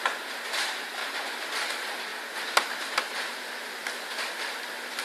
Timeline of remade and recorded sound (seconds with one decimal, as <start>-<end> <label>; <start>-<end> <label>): 0.0-1.0 remade; 1.0-1.7 recorded; 1.7-2.1 remade; 2.1-3.7 recorded; 3.7-5.0 remade